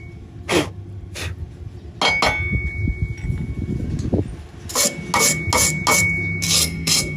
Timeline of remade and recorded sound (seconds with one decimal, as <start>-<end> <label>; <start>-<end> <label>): 0.0-6.6 recorded; 6.6-7.2 remade